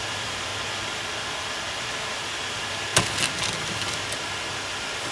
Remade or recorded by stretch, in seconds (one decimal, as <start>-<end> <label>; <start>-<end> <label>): 0.0-0.5 remade; 0.5-1.9 recorded; 1.9-2.9 remade; 2.9-3.6 recorded; 3.6-5.1 remade